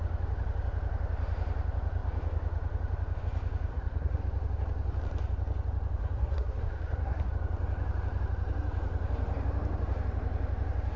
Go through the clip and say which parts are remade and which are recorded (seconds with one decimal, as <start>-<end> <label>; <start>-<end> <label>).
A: 0.0-3.7 recorded; 3.7-4.2 remade; 4.2-6.0 recorded; 6.0-7.3 remade; 7.3-11.0 recorded